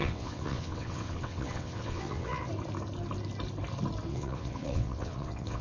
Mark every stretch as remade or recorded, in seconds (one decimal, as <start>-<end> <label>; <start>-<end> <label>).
0.0-2.5 remade; 2.5-4.1 recorded; 4.1-5.6 remade